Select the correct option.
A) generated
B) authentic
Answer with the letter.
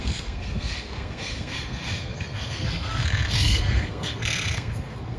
A